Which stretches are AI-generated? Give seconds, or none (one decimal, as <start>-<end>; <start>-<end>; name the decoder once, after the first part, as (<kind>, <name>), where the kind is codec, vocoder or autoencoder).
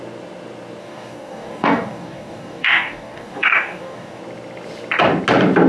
0.8-4.2 (codec, DAC)